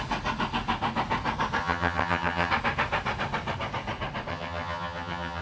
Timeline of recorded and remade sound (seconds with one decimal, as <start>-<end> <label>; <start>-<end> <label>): 0.0-1.6 recorded; 1.6-2.5 remade; 2.5-4.3 recorded; 4.3-5.4 remade